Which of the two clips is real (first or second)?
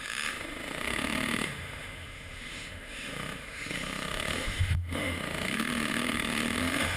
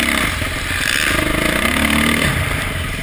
second